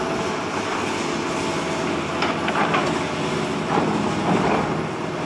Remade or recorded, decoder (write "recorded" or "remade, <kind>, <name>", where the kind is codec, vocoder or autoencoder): recorded